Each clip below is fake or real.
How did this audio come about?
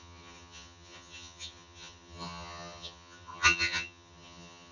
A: fake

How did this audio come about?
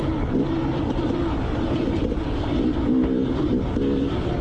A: real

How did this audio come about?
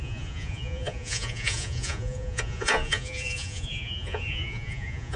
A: fake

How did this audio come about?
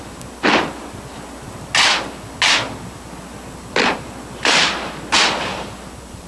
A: real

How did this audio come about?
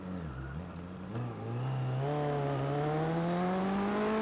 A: real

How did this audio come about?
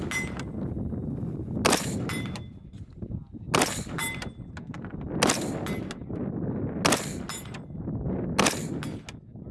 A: real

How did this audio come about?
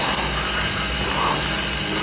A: real